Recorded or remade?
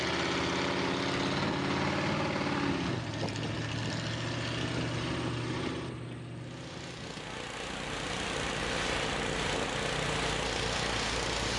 recorded